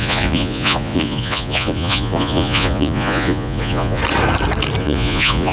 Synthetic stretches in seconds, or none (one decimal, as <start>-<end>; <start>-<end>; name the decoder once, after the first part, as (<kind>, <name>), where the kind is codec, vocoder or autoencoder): 0.0-4.0 (vocoder, Vocos); 4.8-5.5